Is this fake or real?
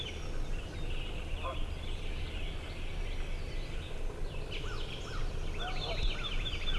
real